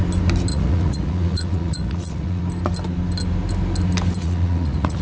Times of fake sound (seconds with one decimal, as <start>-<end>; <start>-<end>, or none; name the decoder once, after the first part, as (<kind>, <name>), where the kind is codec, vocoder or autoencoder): 0.5-2.4 (vocoder, Vocos); 4.2-5.0